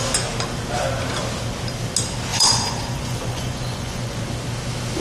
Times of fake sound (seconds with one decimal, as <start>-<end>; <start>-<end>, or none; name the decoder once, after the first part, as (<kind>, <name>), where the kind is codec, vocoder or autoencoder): 2.3-4.2 (vocoder, Vocos)